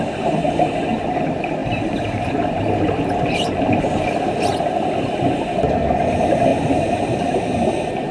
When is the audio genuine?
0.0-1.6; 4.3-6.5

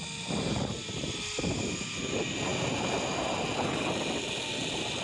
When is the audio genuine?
0.0-5.0

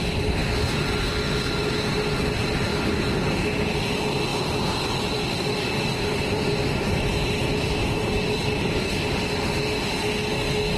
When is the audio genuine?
0.0-4.3; 8.6-10.8

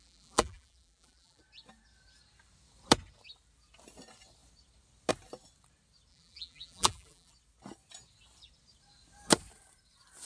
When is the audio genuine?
1.4-6.1; 7.3-10.3

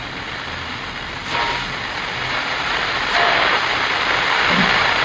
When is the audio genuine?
none